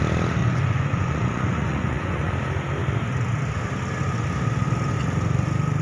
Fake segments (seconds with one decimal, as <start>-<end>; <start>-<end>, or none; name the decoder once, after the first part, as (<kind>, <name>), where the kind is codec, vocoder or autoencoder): 0.4-2.3 (vocoder, Vocos)